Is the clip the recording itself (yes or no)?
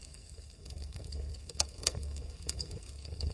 no